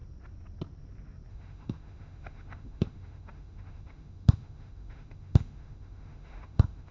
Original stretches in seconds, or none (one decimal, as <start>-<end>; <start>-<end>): 0.0-1.3